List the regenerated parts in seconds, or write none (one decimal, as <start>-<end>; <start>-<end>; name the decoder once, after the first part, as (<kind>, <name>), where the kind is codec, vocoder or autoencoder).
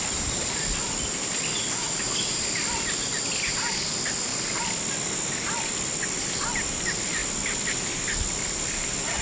none